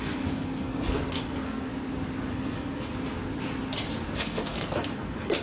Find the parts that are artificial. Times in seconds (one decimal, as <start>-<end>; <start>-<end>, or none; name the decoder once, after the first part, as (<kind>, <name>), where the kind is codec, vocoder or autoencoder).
0.0-1.7 (codec, SNAC); 2.3-2.9; 4.2-5.4

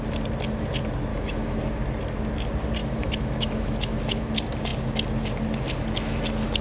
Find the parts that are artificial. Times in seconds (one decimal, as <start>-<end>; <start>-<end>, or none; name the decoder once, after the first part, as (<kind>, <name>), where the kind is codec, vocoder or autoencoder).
1.1-1.6 (autoencoder, DAC-VAE); 2.8-4.3

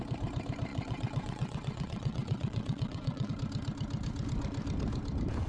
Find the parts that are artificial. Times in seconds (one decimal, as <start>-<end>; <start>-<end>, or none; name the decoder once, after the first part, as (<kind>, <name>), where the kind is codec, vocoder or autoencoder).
0.7-3.3 (vocoder, WaveNeXt)

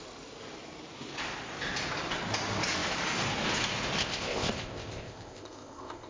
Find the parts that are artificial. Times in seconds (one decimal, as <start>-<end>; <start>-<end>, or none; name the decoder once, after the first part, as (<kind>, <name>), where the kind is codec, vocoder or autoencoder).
4.0-6.1 (codec, ZipCodec)